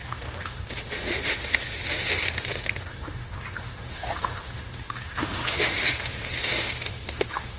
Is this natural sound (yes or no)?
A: no